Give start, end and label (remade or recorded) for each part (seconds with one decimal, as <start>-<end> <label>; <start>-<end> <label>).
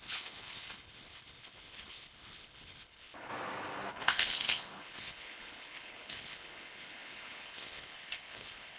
0.0-3.3 remade; 3.3-3.9 recorded; 3.9-8.8 remade